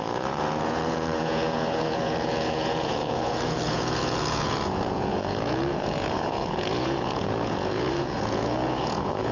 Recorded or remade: remade